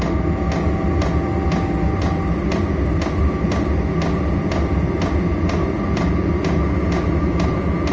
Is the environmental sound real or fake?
real